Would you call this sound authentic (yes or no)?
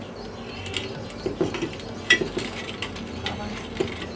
yes